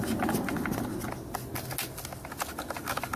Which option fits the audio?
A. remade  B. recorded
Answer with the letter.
B